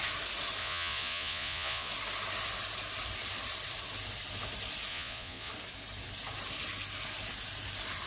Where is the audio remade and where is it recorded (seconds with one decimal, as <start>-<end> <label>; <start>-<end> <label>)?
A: 0.0-0.6 recorded; 0.6-1.9 remade; 1.9-4.9 recorded; 4.9-5.5 remade; 5.5-8.1 recorded